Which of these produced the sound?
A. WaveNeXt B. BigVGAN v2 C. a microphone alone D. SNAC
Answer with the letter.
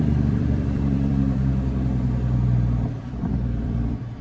B